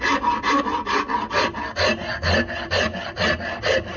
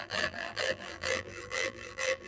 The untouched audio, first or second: first